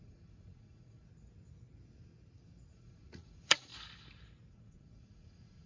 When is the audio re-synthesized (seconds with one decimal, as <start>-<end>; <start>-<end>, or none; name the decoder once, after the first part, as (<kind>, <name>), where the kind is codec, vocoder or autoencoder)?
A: 0.0-1.1 (vocoder, Vocos); 2.7-3.7; 4.5-5.7